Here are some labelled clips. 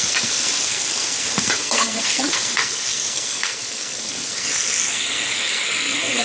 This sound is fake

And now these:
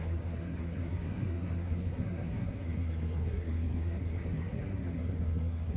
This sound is fake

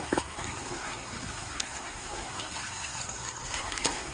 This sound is fake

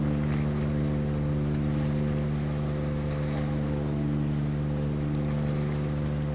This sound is real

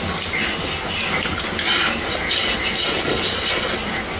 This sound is real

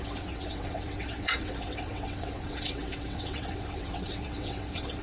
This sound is fake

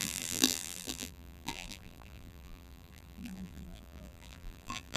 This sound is fake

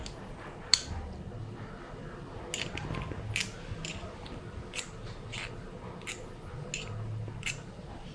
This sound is real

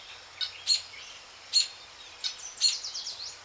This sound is real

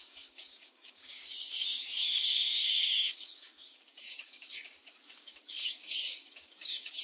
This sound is fake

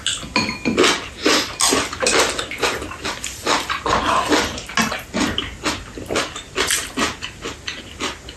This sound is real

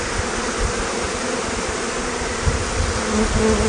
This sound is real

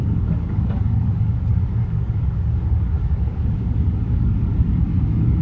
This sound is fake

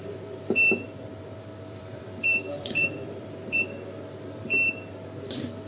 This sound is fake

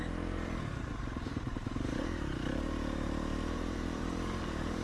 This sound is fake